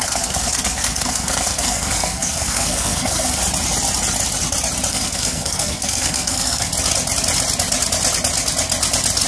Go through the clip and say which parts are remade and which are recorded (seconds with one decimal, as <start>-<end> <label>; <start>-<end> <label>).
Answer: 0.0-3.4 remade; 3.4-4.9 recorded; 4.9-6.7 remade; 6.7-9.3 recorded